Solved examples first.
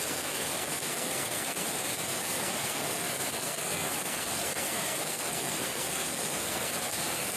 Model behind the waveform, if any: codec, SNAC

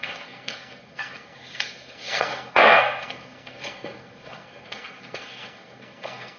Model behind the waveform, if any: codec, SNAC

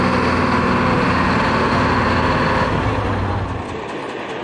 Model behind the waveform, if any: none